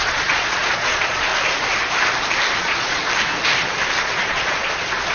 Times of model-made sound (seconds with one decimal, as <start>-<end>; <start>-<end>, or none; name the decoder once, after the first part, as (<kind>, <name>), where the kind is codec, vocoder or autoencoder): 0.0-1.3 (vocoder, Vocos); 2.6-3.0; 4.0-5.1